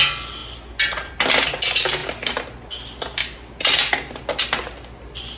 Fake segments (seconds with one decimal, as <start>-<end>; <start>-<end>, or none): none